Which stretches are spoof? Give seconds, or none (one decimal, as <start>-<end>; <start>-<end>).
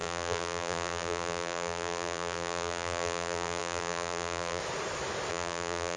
0.0-4.6; 5.3-6.0